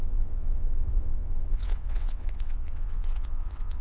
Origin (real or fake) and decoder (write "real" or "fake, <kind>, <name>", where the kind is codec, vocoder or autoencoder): fake, vocoder, WaveNeXt